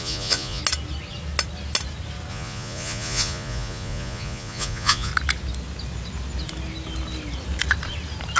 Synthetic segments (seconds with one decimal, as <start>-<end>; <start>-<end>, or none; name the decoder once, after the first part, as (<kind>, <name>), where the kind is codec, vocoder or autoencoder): 0.0-0.6 (vocoder, Vocos); 2.3-5.1